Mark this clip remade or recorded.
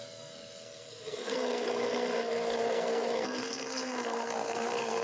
remade